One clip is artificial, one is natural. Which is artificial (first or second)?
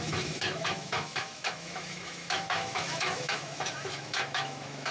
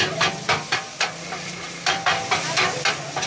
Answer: first